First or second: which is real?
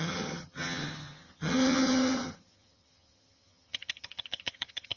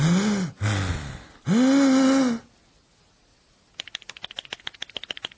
second